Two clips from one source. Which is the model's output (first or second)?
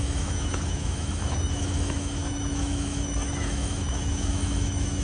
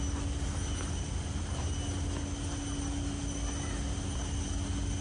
first